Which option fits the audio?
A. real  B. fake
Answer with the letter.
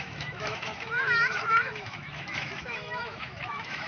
B